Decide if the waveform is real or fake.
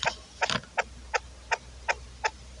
real